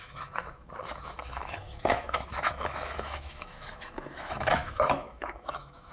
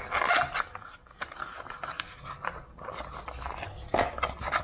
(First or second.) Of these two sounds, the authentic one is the second